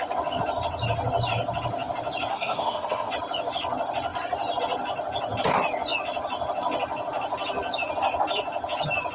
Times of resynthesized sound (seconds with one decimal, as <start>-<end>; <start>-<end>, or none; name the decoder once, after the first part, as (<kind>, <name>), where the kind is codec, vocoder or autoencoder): 2.3-3.1 (codec, SNAC)